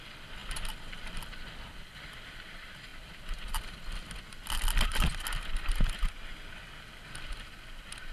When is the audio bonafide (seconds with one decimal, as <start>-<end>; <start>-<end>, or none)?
0.0-8.1